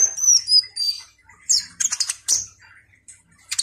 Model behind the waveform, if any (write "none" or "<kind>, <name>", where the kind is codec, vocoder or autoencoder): vocoder, BigVGAN v2